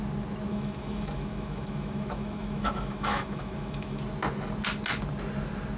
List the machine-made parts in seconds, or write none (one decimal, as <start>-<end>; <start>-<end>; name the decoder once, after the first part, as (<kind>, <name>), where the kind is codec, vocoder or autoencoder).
0.5-4.0 (autoencoder, DAC-VAE)